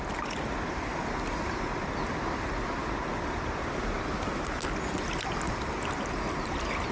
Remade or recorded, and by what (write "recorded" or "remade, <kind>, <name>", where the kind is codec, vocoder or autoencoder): recorded